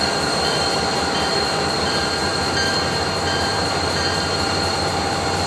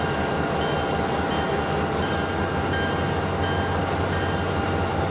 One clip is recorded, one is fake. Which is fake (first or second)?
first